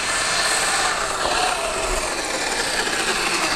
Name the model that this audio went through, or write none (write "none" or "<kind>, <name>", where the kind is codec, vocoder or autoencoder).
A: none